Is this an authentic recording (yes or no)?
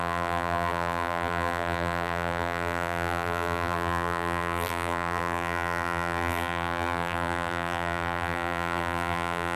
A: no